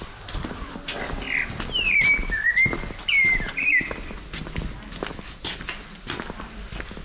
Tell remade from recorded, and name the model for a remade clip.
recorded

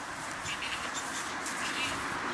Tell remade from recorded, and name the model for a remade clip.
recorded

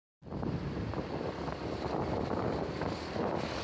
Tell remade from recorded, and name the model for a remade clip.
recorded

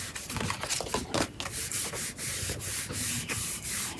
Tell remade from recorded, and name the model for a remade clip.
recorded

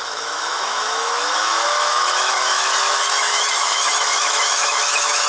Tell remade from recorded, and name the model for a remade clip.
remade, autoencoder, DAC-VAE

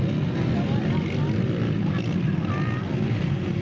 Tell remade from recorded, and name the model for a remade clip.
recorded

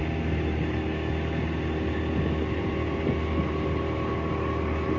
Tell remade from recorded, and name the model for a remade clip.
recorded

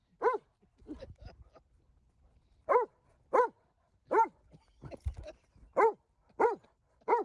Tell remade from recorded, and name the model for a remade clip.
recorded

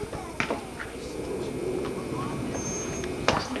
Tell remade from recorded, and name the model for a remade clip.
recorded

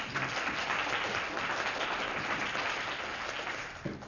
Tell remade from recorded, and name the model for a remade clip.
recorded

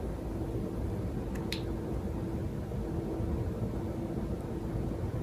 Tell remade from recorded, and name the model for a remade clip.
recorded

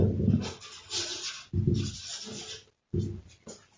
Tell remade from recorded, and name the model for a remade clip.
recorded